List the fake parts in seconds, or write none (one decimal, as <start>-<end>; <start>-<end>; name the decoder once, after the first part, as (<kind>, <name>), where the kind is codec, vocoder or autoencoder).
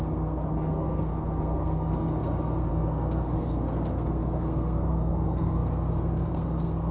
0.0-6.9 (codec, SNAC)